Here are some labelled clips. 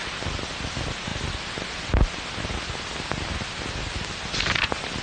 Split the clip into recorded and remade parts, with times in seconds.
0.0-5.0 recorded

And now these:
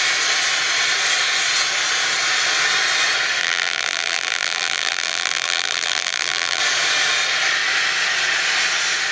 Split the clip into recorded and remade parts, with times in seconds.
0.0-3.4 recorded; 3.4-6.6 remade; 6.6-9.1 recorded

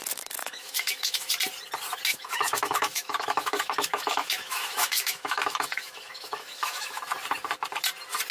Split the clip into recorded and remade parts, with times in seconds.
0.0-0.4 recorded; 0.4-1.3 remade; 1.3-2.1 recorded; 2.1-7.0 remade; 7.0-8.3 recorded

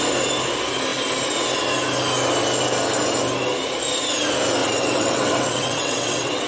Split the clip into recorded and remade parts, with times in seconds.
0.0-4.6 recorded; 4.6-6.5 remade

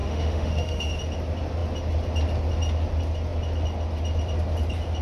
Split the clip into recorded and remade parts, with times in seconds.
0.0-0.9 remade; 0.9-5.0 recorded

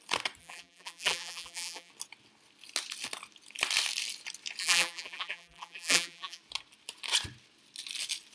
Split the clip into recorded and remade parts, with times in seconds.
0.0-0.4 recorded; 0.4-1.9 remade; 1.9-4.6 recorded; 4.6-6.4 remade; 6.4-8.3 recorded